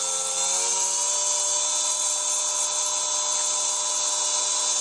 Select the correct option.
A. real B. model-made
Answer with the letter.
A